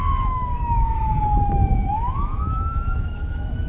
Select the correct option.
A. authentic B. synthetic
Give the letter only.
B